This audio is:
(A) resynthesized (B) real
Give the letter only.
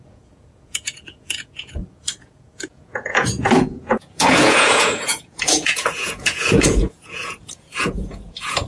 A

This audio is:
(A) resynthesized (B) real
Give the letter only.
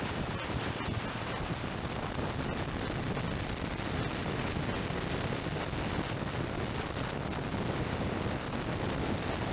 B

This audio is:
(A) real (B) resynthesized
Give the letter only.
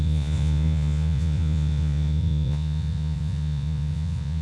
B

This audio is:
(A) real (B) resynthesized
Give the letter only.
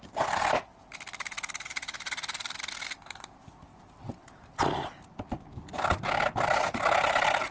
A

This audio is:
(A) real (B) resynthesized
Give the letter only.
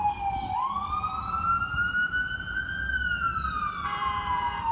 A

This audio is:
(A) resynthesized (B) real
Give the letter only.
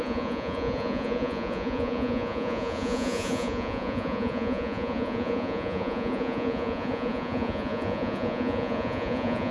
A